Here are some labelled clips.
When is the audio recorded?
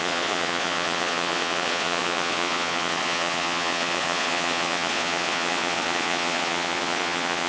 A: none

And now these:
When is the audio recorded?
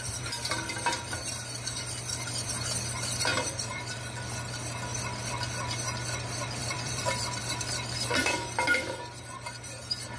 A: 0.0-3.3; 4.2-6.6; 7.4-10.2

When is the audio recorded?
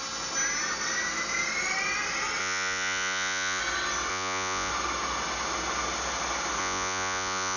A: 0.0-2.4; 3.6-4.1; 4.7-6.6